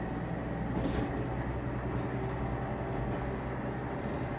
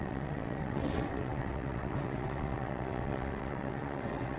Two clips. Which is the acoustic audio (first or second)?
first